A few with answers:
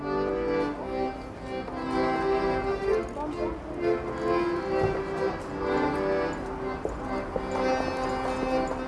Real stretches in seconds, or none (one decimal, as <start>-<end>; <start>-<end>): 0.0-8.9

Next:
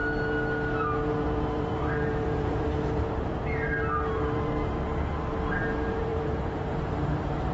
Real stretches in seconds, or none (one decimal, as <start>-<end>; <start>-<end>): 0.0-1.1; 3.3-4.1; 4.9-5.6

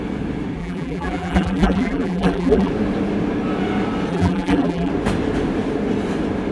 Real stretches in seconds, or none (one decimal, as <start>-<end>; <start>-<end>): 0.0-0.6; 2.7-4.1; 4.9-6.5

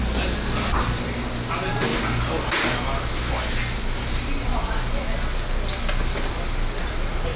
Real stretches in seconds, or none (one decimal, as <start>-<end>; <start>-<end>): 0.0-7.4

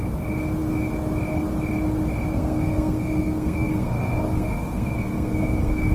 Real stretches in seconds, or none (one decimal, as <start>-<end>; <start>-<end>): 0.0-2.3

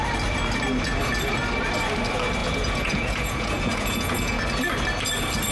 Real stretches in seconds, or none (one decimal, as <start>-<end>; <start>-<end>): 0.0-2.4; 4.4-5.5

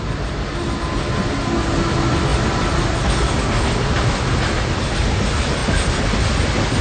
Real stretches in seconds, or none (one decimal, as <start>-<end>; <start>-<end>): 0.0-6.8

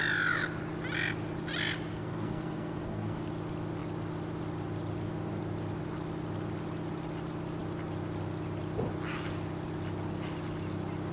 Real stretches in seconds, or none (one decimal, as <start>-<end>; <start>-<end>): 0.0-1.9; 3.2-11.1